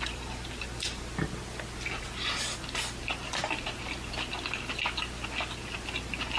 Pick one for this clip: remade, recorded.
recorded